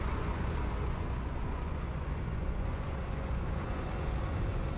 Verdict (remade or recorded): remade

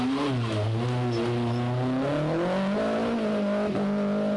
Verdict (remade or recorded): recorded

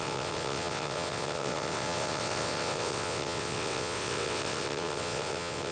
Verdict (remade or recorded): remade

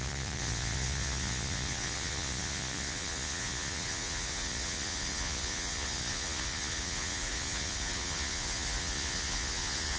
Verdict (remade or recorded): remade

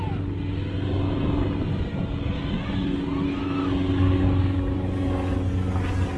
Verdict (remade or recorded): recorded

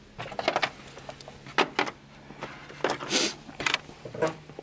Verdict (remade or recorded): recorded